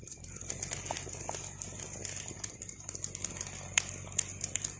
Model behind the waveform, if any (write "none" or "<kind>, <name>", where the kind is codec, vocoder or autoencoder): none